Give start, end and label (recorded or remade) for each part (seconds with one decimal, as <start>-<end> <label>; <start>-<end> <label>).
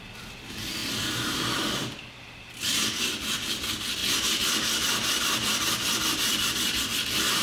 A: 0.0-7.4 remade